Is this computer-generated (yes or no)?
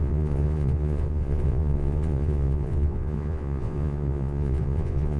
yes